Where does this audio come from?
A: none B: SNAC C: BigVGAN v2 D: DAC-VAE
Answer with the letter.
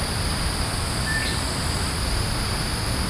A